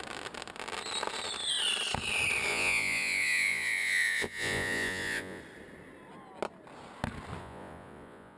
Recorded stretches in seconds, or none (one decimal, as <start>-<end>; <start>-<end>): 0.0-2.5; 5.4-7.4

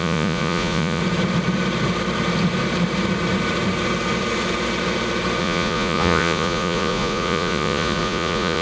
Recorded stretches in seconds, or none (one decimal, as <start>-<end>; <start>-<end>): 1.0-5.4

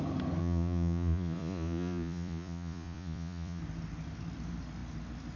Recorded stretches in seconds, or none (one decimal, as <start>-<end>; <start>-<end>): 0.0-0.4; 3.6-5.4

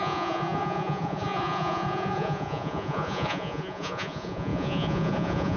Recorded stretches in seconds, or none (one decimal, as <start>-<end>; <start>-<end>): none

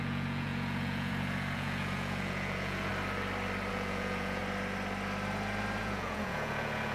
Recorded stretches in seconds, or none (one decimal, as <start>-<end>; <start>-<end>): 2.9-3.7; 4.4-5.8

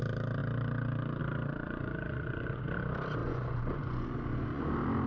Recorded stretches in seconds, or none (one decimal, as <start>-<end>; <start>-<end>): 0.0-1.6; 2.6-3.2; 4.6-5.1

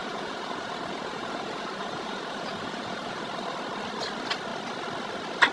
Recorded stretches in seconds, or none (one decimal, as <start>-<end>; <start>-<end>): 3.3-5.5

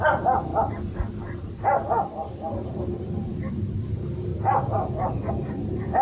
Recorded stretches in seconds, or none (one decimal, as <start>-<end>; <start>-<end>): 0.0-6.0